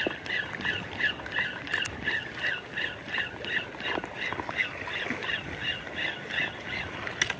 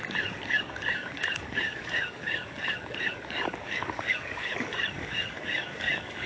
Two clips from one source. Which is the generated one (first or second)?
second